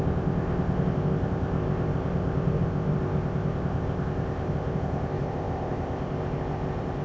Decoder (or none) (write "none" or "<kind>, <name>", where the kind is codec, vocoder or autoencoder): codec, ZipCodec